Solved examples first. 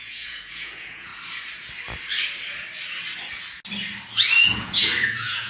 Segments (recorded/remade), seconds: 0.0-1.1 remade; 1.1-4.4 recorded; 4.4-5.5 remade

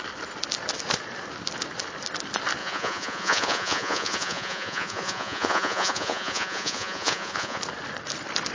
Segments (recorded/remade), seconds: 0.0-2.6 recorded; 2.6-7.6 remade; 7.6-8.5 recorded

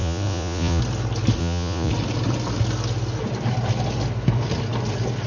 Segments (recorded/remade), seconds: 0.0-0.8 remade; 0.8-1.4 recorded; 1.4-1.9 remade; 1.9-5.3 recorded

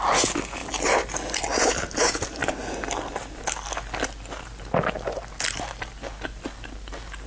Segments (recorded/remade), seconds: 0.0-7.3 recorded